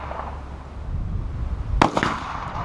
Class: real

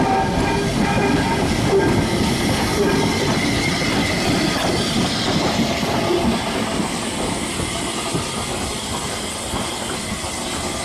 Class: real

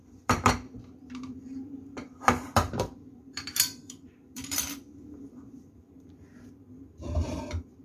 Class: fake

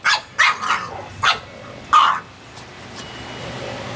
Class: real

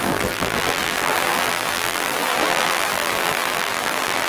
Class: fake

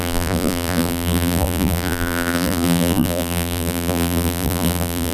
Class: fake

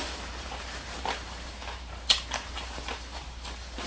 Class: fake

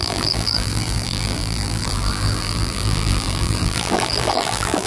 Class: fake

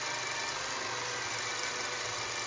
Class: real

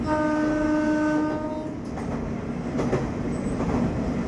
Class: real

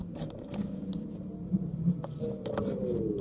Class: real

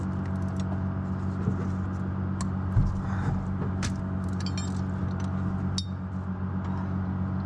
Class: real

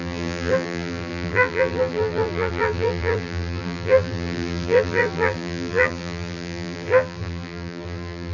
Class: fake